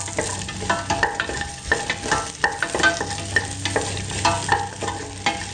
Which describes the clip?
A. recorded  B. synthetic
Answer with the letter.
A